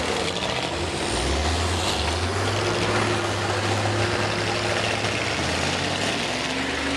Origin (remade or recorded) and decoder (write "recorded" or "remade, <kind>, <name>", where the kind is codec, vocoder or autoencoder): recorded